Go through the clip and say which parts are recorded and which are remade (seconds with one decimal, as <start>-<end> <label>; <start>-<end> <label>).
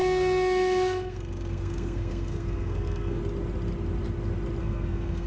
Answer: 0.0-3.2 remade; 3.2-4.6 recorded; 4.6-5.3 remade